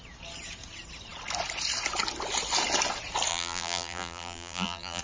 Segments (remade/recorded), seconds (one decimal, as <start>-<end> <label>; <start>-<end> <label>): 0.0-3.3 recorded; 3.3-5.0 remade